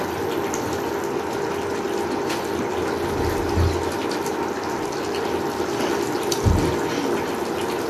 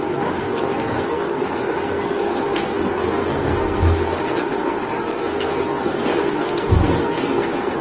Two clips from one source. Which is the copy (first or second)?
second